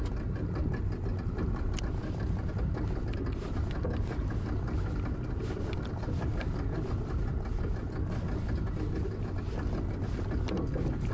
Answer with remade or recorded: recorded